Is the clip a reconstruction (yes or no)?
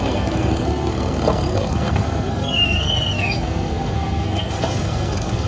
yes